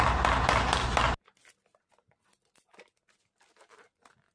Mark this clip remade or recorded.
recorded